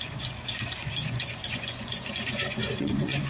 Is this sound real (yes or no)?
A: no